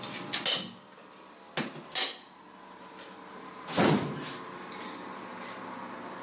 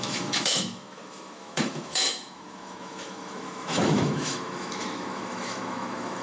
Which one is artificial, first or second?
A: second